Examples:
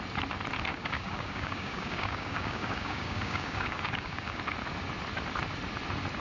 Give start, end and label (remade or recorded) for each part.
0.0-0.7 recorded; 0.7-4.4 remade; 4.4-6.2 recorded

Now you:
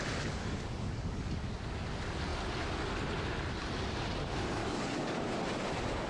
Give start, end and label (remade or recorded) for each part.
0.0-0.4 recorded; 0.4-1.5 remade; 1.5-4.6 recorded; 4.6-5.4 remade; 5.4-6.1 recorded

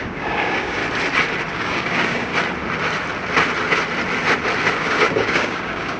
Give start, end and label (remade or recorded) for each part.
0.0-0.8 remade; 0.8-1.5 recorded; 1.5-2.3 remade; 2.3-4.8 recorded; 4.8-6.0 remade

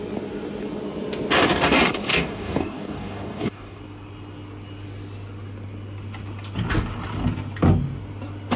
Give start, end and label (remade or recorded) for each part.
0.0-2.1 recorded; 2.1-3.8 remade; 3.8-8.6 recorded

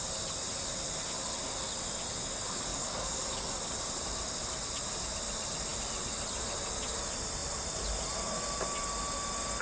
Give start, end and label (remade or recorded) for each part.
0.0-2.7 recorded; 2.7-3.6 remade; 3.6-9.6 recorded

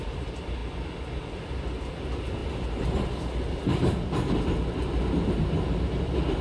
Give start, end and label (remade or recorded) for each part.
0.0-6.4 recorded